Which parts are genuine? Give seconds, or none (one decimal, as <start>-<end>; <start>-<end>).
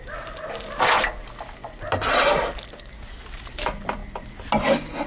0.0-5.1